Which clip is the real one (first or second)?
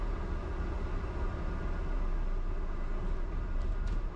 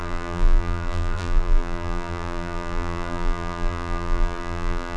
first